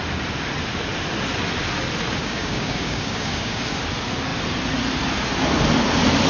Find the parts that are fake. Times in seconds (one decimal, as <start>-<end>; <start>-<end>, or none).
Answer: 2.2-3.6

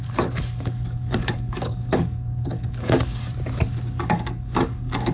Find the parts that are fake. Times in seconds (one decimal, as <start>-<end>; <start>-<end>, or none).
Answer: 0.0-3.3; 3.9-5.1

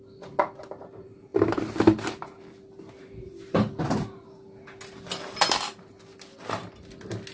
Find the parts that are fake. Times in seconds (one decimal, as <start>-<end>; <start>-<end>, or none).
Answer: none

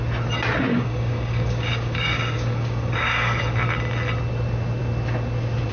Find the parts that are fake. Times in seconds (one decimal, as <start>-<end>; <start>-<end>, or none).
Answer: 0.7-3.4